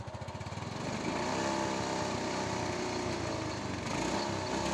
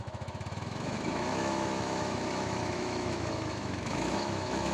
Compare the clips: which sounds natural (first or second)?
first